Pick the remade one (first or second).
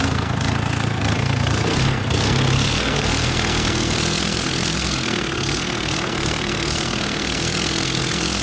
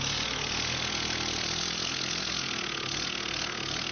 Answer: first